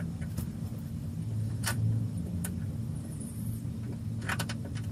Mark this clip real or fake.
fake